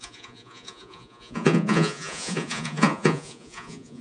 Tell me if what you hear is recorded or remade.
remade